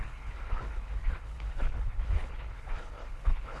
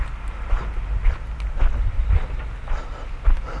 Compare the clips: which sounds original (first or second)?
second